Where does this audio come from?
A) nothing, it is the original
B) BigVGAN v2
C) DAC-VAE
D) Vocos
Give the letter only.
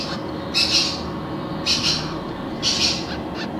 A